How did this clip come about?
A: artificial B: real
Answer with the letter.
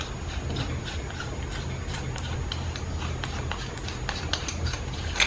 B